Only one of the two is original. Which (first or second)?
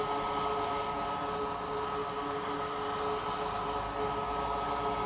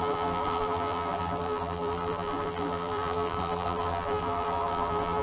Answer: first